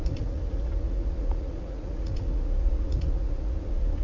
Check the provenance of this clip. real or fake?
fake